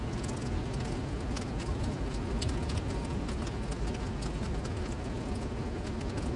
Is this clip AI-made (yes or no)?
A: no